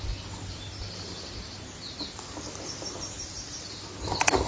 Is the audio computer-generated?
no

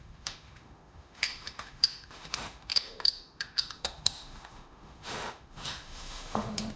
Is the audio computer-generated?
yes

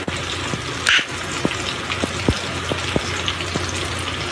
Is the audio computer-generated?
no